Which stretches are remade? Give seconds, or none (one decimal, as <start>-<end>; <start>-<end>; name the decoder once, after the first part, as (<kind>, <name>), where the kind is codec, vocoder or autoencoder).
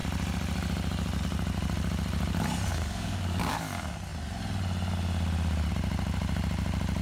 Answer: 2.7-3.6 (codec, DAC)